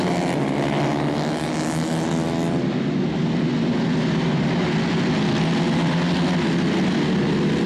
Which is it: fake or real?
real